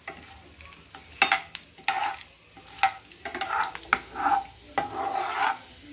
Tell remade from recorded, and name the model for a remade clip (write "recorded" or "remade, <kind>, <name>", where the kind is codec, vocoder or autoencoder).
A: recorded